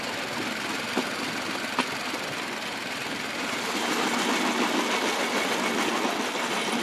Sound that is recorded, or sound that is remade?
recorded